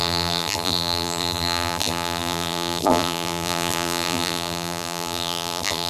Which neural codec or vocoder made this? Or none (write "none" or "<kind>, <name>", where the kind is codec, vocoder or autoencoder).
vocoder, BigVGAN v2